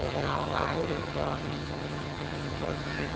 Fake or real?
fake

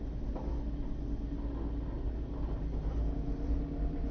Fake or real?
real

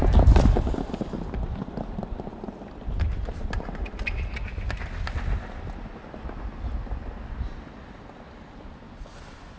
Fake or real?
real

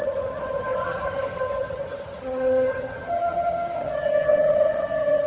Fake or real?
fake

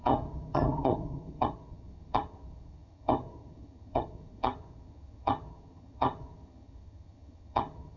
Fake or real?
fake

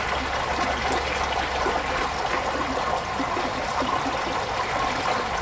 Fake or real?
real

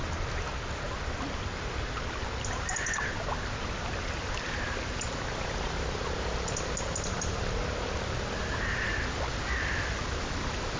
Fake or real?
real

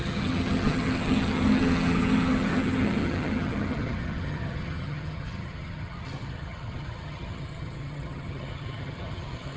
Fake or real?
fake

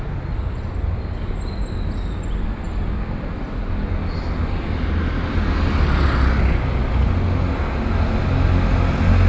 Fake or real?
real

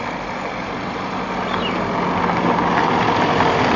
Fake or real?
real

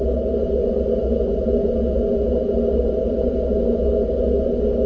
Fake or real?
real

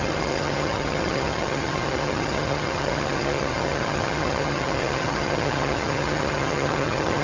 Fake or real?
fake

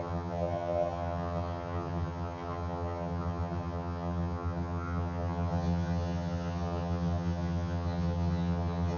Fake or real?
fake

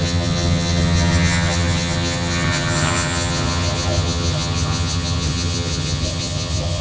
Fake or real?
fake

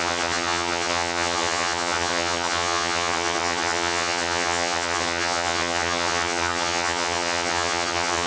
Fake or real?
fake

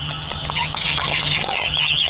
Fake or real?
fake